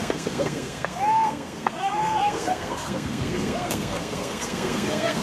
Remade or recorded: remade